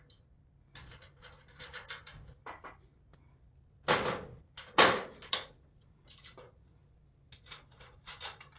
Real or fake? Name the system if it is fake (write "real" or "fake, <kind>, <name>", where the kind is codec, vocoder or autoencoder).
real